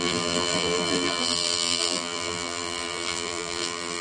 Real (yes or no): no